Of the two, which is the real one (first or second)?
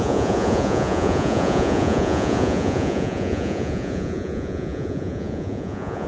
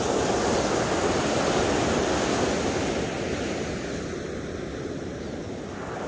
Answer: second